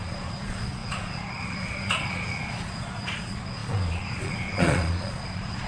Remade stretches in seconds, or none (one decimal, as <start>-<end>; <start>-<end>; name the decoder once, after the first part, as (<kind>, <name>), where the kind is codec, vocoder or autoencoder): 0.0-5.7 (vocoder, Vocos)